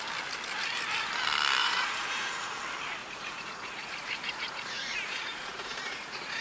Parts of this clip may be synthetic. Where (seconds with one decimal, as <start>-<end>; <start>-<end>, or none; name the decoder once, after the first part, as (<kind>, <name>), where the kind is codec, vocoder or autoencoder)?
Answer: 1.6-2.6 (vocoder, Vocos); 3.0-6.4